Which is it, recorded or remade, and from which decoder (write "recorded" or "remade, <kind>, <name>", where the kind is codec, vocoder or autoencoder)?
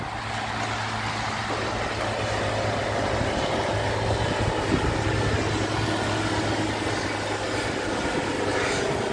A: recorded